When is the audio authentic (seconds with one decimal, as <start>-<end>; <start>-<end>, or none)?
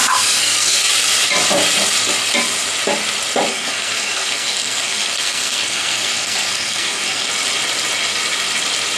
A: 0.9-3.5; 7.3-9.0